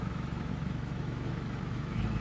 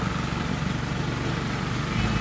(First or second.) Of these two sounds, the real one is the second